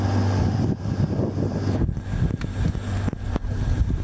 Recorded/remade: recorded